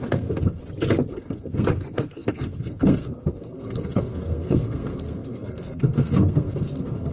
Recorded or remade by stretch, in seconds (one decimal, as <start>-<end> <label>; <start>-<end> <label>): 0.0-0.6 remade; 0.6-1.1 recorded; 1.1-7.1 remade